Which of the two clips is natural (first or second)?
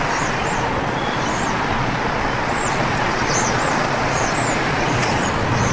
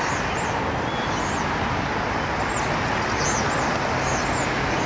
second